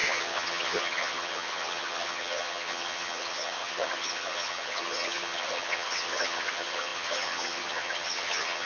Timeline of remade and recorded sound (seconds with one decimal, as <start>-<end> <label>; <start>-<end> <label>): 0.0-8.7 remade